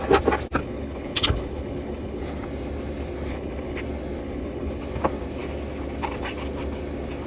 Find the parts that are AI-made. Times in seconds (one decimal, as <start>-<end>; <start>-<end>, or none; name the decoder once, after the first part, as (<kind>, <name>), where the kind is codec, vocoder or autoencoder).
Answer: 0.6-2.2 (codec, HILCodec); 3.3-3.8; 4.2-4.8